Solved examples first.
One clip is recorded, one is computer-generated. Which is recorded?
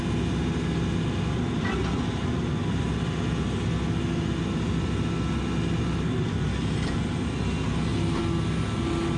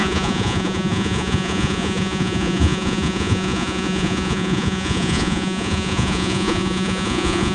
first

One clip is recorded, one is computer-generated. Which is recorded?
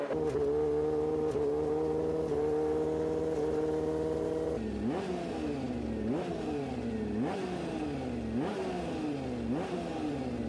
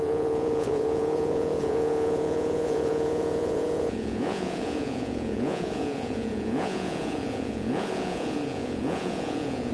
first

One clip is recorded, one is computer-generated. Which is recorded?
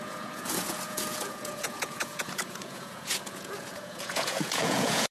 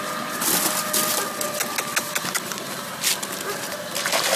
second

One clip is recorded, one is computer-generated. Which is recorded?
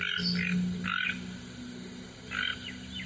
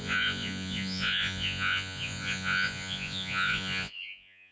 first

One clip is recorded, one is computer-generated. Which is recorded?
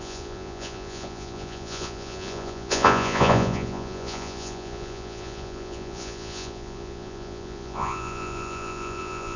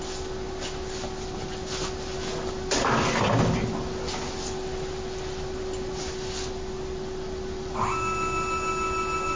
second